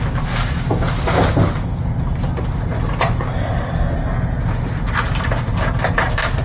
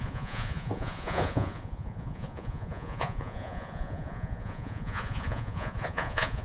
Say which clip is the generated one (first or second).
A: second